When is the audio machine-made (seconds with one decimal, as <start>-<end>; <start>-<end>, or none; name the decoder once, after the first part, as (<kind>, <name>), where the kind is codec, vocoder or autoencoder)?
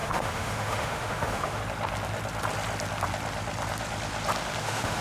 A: 0.0-1.6 (autoencoder, DAC-VAE); 4.6-5.0